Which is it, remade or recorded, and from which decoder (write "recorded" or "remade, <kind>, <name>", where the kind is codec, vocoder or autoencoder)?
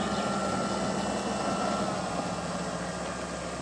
recorded